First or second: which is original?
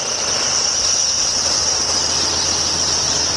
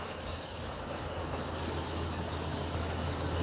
first